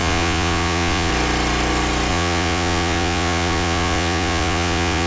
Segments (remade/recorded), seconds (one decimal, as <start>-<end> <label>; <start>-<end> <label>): 0.0-1.1 remade; 1.1-2.1 recorded; 2.1-5.1 remade